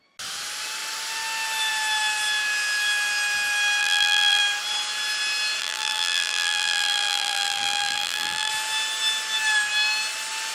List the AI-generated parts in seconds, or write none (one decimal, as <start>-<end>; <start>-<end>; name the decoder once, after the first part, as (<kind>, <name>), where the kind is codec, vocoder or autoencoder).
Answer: 3.8-4.4 (vocoder, BigVGAN v2); 5.6-8.5

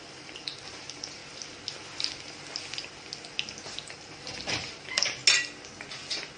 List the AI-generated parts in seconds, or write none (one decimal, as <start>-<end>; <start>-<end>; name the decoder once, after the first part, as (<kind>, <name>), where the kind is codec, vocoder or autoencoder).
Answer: 0.0-1.2 (vocoder, BigVGAN v2); 3.9-5.2

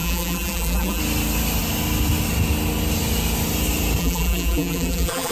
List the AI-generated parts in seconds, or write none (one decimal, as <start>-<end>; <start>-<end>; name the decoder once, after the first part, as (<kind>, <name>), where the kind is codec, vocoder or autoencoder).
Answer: 0.0-1.0 (vocoder, BigVGAN v2); 4.0-5.3